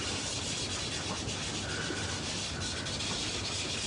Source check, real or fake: real